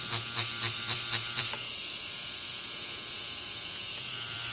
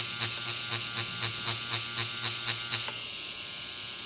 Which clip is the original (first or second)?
second